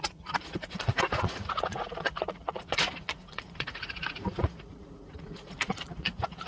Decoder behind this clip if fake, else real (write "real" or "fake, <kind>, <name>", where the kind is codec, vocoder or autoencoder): fake, vocoder, Vocos